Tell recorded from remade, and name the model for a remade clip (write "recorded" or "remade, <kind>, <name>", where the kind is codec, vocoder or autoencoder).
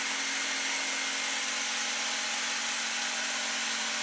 recorded